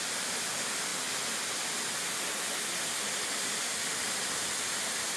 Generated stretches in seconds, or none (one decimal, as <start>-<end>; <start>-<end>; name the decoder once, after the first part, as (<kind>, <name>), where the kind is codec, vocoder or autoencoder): none